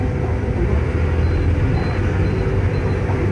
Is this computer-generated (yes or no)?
no